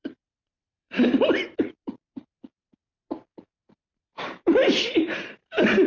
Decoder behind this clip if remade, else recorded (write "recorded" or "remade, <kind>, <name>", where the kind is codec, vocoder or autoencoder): remade, vocoder, BigVGAN v2